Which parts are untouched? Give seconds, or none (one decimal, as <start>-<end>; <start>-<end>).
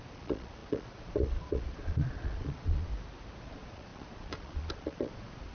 2.9-3.4